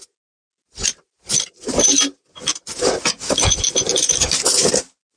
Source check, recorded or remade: recorded